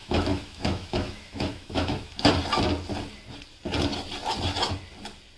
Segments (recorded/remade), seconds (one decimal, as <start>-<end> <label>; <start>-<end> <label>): 0.0-2.3 remade; 2.3-5.4 recorded